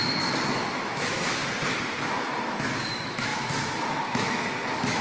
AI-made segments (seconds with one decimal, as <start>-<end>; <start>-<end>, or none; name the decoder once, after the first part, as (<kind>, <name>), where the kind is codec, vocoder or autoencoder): 0.0-1.4 (autoencoder, DAC-VAE); 2.1-5.0